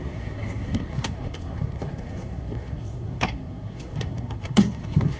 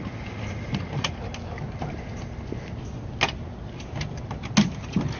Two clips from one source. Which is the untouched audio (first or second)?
second